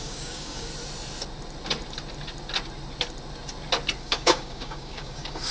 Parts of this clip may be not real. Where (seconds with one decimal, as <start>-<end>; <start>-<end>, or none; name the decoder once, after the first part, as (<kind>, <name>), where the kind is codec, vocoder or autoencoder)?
0.0-0.7 (codec, DAC); 4.0-5.5